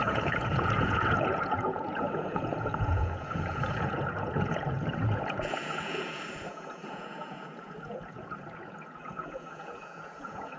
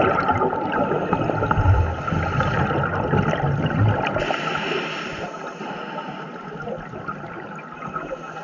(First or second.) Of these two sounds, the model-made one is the first